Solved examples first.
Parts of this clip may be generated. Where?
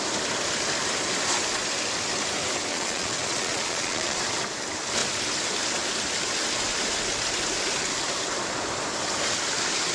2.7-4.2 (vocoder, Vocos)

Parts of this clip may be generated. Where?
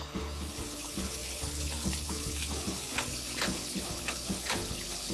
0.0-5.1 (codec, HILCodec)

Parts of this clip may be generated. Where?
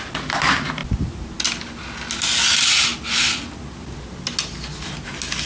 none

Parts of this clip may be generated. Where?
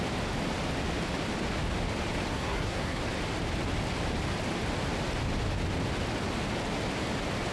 2.3-3.0 (codec, SNAC)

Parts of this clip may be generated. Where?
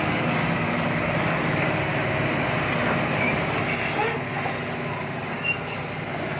0.0-1.9 (codec, DAC); 5.7-6.4